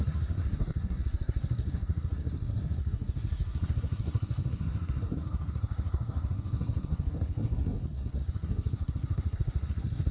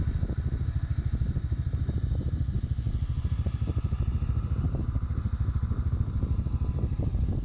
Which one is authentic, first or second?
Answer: second